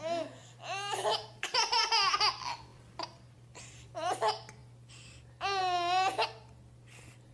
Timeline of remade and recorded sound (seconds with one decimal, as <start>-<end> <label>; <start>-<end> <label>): 0.0-0.4 recorded; 0.4-1.6 remade; 1.6-2.7 recorded; 2.7-4.1 remade; 4.1-7.3 recorded